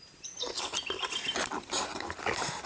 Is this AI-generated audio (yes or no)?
no